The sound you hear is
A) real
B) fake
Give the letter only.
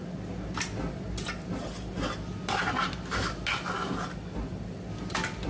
A